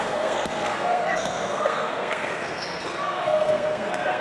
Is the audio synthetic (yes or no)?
yes